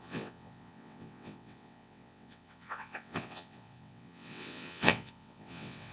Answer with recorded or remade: remade